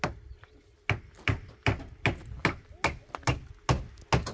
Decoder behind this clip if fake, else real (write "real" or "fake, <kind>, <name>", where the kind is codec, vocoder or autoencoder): real